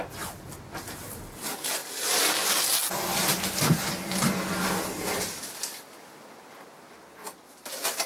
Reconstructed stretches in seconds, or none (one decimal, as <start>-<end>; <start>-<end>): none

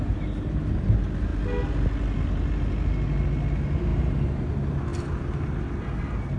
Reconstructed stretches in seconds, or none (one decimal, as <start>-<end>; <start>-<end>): 3.9-4.5

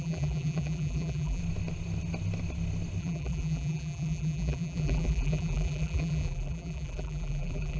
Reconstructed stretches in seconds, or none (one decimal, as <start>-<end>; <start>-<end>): 0.0-1.4; 3.0-7.8